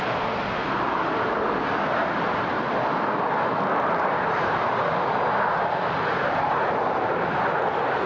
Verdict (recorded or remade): recorded